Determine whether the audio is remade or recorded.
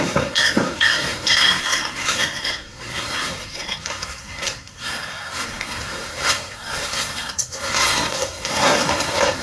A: remade